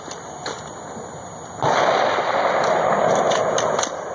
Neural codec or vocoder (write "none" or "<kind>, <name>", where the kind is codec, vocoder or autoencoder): vocoder, BigVGAN v2